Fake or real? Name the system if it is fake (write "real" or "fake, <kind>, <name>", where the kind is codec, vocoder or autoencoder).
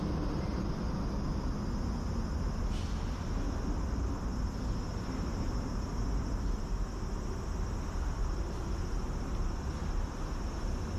real